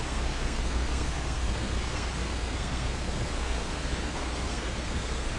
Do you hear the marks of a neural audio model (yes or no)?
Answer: yes